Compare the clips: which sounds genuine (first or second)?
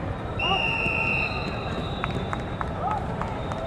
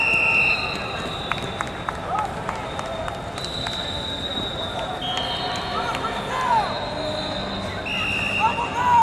second